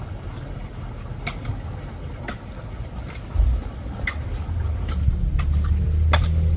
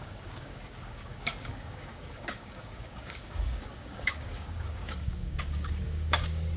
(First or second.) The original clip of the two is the first